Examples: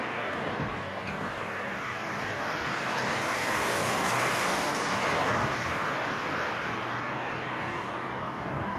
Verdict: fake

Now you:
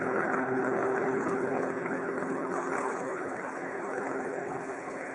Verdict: fake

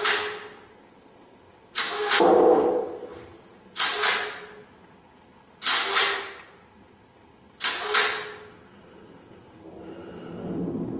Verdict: real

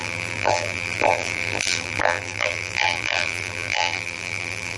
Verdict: fake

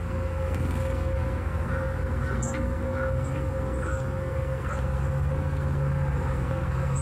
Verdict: fake